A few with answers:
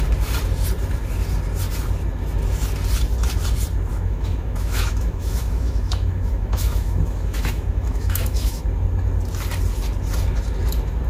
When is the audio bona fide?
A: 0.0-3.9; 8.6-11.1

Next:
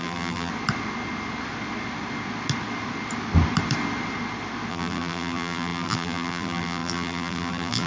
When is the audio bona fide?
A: 0.5-4.7

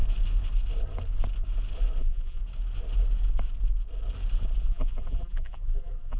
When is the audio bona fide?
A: 0.0-2.0; 2.4-4.7

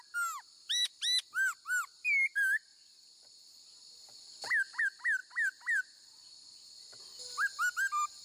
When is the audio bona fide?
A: 0.0-8.2

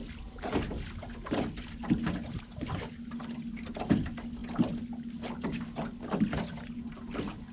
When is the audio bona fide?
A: 0.0-7.5

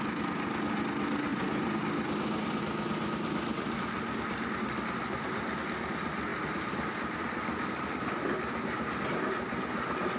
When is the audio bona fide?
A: 0.0-10.2

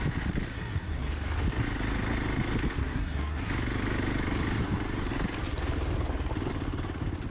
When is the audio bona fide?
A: 0.0-0.5; 1.1-2.8; 3.5-7.3

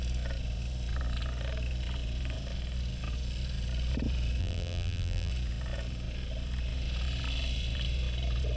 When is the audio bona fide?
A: 0.0-4.4; 5.3-8.6